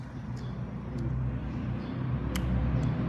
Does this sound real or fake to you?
real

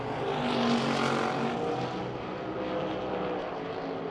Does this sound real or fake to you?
real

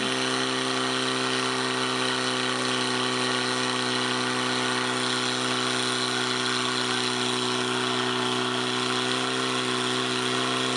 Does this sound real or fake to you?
real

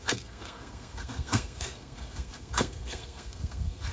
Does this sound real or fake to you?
fake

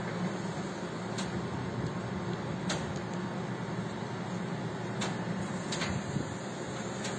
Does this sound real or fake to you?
real